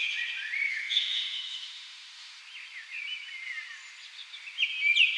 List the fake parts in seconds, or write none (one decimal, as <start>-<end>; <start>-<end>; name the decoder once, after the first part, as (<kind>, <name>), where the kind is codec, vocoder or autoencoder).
0.7-2.4 (autoencoder, DAC-VAE)